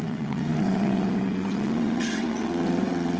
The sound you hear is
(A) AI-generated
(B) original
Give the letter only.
A